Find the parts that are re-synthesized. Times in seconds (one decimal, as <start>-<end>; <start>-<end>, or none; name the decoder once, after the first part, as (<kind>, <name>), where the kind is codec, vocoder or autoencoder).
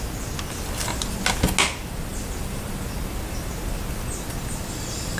2.1-2.7 (vocoder, BigVGAN v2)